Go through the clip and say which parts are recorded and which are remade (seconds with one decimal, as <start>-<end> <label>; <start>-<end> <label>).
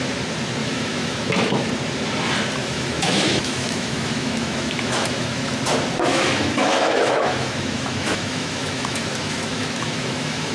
0.0-0.6 recorded; 0.6-1.6 remade; 1.6-2.6 recorded; 2.6-5.6 remade; 5.6-6.1 recorded; 6.1-10.5 remade